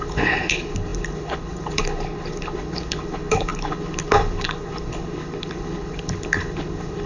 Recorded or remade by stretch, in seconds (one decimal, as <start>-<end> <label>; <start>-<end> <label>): 0.0-7.1 remade